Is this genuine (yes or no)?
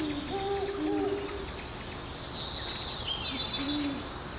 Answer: yes